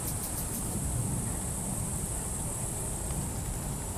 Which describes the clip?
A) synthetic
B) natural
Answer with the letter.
B